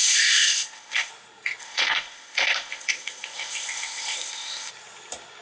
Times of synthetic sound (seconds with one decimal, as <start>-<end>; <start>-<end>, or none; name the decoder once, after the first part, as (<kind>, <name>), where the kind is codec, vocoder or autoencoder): 0.0-1.1 (codec, ZipCodec); 1.6-4.7